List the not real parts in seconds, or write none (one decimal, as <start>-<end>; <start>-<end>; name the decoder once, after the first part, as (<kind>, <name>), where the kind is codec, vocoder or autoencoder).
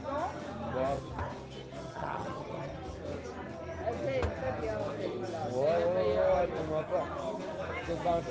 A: 1.9-2.7 (vocoder, HiFi-GAN)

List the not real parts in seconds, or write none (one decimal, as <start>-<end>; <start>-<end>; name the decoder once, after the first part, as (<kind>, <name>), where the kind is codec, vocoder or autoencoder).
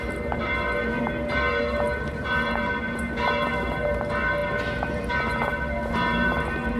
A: 0.0-6.8 (vocoder, BigVGAN v2)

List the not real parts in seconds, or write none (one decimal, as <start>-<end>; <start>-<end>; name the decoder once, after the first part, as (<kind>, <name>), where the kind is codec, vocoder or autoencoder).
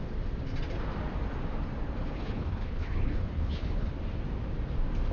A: 2.0-3.9 (codec, HILCodec)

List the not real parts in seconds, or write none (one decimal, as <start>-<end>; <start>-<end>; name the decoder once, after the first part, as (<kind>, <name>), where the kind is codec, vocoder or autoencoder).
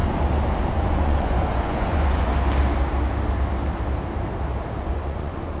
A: 0.7-2.3 (vocoder, Vocos); 4.8-5.6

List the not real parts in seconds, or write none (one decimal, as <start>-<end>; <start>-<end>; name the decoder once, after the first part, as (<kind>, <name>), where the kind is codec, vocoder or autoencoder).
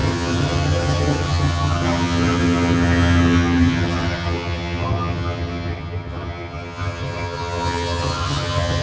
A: 0.0-8.8 (vocoder, HiFi-GAN)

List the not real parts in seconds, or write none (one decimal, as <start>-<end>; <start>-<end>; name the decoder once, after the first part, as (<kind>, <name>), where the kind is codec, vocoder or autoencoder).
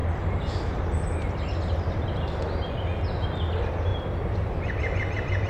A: 3.9-4.5 (vocoder, BigVGAN v2)